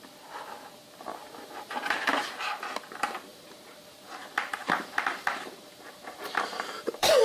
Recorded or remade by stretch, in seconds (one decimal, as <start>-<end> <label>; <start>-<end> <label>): 0.0-1.2 recorded; 1.2-2.2 remade; 2.2-3.3 recorded; 3.3-7.2 remade